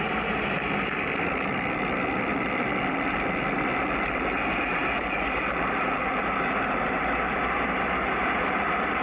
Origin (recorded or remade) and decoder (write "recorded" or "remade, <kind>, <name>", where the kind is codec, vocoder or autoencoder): recorded